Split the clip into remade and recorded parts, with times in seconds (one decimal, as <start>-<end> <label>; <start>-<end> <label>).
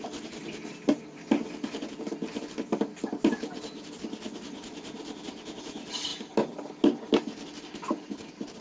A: 0.0-8.6 recorded